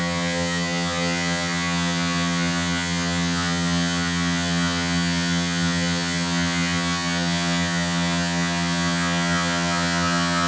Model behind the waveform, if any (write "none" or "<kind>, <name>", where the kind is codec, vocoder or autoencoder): vocoder, HiFi-GAN